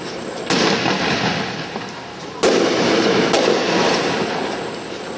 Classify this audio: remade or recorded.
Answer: recorded